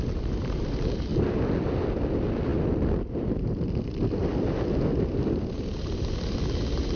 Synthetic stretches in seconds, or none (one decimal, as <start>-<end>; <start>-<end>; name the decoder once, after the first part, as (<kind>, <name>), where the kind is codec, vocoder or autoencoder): none